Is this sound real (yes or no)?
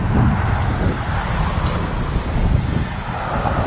yes